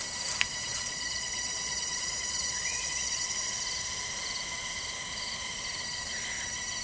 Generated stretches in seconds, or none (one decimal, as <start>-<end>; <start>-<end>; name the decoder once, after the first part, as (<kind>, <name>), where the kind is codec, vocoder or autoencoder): 0.7-3.2 (vocoder, Vocos)

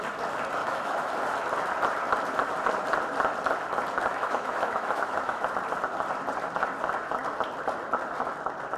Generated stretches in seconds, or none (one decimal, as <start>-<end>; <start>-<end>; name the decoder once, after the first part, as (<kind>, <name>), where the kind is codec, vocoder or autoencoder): 0.6-1.1 (autoencoder, DAC-VAE); 4.1-5.4

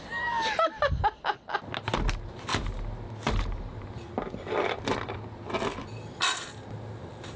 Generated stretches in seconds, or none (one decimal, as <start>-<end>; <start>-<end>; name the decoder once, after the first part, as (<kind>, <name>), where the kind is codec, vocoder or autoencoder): none

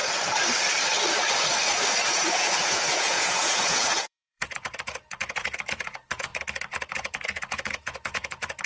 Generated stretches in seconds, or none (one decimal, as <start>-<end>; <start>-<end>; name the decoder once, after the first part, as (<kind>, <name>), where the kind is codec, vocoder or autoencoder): 2.1-6.3 (vocoder, Vocos); 6.9-8.7

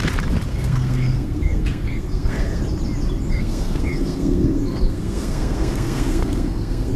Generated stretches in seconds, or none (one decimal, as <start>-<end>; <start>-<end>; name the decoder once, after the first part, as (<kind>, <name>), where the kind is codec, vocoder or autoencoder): 0.5-2.6 (codec, SNAC); 3.3-7.0

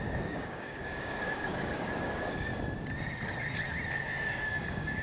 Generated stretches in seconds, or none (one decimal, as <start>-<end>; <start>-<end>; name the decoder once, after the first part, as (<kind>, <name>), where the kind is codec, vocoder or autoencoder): 0.0-2.5 (codec, DAC); 3.9-5.0

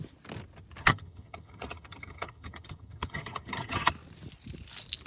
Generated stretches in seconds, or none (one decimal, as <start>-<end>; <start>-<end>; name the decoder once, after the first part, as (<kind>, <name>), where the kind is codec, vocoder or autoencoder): 0.8-3.9 (vocoder, HiFi-GAN)